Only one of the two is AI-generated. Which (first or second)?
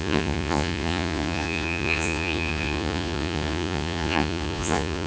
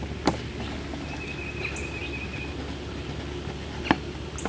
first